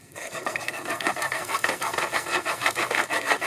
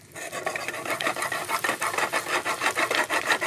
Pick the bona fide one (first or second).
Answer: second